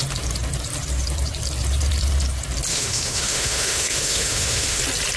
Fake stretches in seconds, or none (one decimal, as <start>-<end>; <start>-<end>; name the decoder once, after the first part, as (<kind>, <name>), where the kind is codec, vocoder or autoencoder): 2.7-4.8 (autoencoder, DAC-VAE)